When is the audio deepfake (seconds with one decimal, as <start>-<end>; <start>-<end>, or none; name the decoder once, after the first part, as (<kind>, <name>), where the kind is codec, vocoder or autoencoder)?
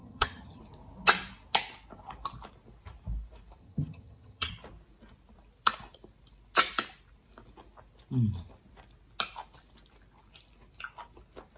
0.0-0.6 (vocoder, HiFi-GAN); 3.6-4.5